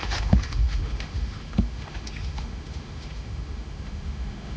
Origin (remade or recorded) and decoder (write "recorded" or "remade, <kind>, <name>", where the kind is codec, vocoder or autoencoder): remade, autoencoder, DAC-VAE